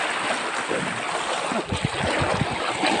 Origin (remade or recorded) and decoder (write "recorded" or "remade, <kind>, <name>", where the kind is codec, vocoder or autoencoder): recorded